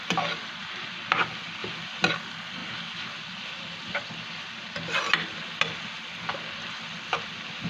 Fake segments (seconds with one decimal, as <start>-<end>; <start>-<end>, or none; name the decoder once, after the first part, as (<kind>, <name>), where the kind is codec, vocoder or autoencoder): none